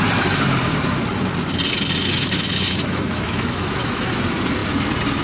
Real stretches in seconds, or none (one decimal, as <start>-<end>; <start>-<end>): 0.0-2.1; 4.1-5.2